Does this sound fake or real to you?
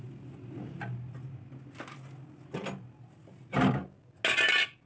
real